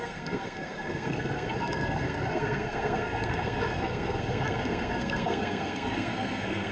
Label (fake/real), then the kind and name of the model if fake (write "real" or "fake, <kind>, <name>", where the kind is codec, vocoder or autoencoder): fake, codec, SNAC